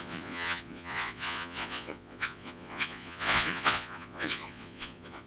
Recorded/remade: remade